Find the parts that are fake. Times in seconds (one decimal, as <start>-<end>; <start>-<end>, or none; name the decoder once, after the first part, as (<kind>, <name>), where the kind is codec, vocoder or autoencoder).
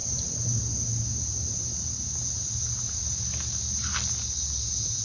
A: 0.0-0.6 (vocoder, BigVGAN v2); 1.1-2.1